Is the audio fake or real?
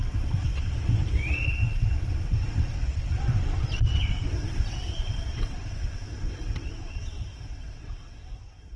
fake